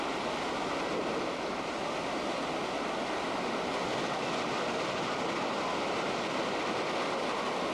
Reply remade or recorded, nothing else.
recorded